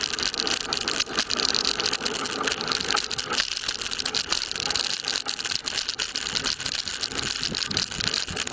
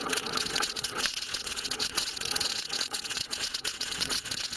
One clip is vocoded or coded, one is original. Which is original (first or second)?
first